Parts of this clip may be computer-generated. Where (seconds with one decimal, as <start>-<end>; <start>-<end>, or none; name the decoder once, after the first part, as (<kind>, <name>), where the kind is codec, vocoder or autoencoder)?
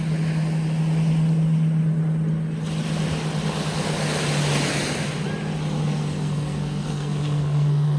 5.8-8.0 (codec, SNAC)